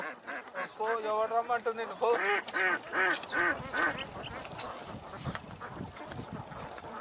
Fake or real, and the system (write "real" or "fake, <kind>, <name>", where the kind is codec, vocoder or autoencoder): real